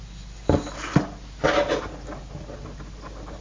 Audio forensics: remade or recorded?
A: recorded